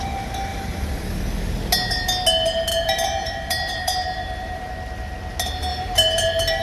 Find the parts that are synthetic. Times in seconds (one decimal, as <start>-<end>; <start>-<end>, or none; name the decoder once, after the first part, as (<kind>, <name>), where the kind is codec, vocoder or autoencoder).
0.5-1.0 (vocoder, BigVGAN v2); 2.7-4.7; 5.7-6.6